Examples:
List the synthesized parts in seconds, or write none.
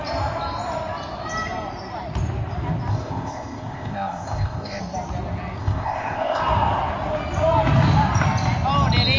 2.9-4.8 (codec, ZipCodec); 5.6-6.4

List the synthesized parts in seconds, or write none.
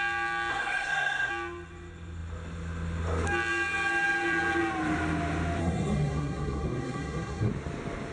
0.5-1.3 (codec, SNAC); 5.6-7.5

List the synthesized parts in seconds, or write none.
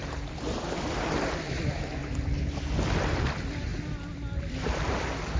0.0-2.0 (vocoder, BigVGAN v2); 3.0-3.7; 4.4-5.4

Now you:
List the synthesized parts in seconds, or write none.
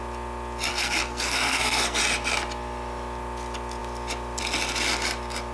0.7-2.0 (codec, SNAC)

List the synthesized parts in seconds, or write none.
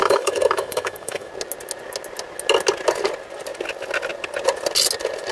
0.0-1.3 (autoencoder, DAC-VAE)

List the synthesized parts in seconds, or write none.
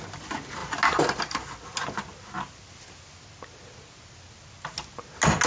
none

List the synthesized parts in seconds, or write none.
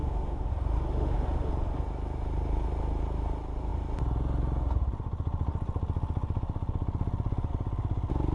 0.0-0.5 (autoencoder, DAC-VAE); 0.9-1.5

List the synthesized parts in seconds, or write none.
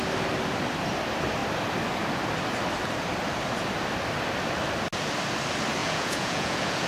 5.8-6.9 (vocoder, Vocos)